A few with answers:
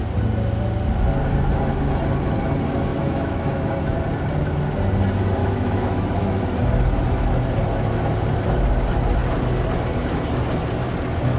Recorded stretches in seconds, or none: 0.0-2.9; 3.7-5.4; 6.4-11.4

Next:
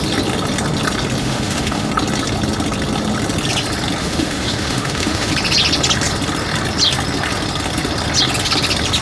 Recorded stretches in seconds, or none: 0.0-1.2; 1.9-4.0; 5.3-9.0

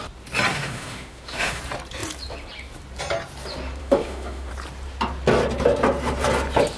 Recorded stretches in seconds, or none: 0.0-0.5; 1.6-3.8; 4.5-6.8

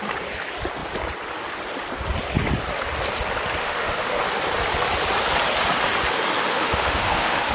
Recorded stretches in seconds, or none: 0.0-3.6; 4.2-6.5

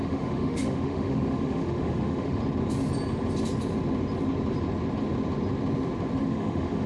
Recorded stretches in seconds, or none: 2.4-6.2

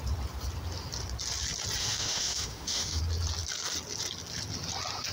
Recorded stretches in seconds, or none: 0.0-1.8; 3.0-5.1